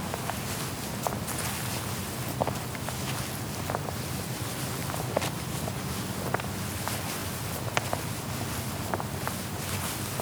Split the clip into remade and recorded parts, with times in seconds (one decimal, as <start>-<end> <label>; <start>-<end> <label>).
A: 0.0-4.8 recorded; 4.8-5.3 remade; 5.3-10.2 recorded